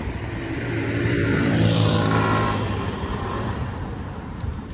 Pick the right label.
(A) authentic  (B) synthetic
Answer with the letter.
B